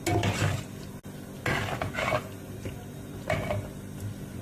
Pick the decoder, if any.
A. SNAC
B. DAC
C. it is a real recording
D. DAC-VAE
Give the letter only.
C